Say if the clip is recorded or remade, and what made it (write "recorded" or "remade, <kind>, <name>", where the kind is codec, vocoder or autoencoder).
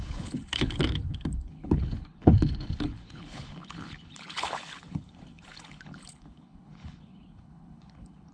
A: remade, codec, HILCodec